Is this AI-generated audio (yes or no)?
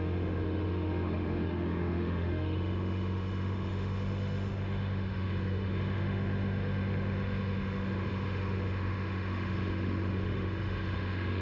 yes